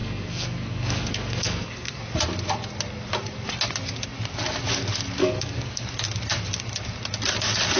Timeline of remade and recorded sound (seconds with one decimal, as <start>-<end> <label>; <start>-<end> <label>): 0.0-2.0 remade; 2.0-5.2 recorded; 5.2-5.8 remade; 5.8-7.8 recorded